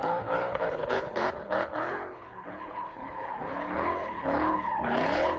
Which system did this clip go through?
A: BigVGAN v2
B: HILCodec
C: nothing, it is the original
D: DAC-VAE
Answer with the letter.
B